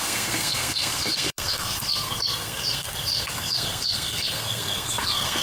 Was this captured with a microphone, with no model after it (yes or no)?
no